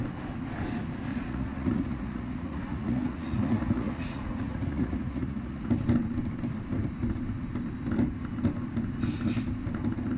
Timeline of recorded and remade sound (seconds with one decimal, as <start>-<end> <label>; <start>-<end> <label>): 0.0-1.1 recorded; 1.1-5.7 remade; 5.7-10.2 recorded